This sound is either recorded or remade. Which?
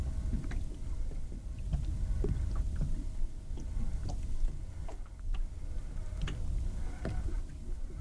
recorded